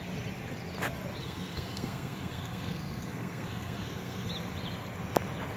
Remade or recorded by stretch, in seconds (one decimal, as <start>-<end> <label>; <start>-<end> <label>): 0.0-1.2 recorded; 1.2-4.3 remade; 4.3-5.6 recorded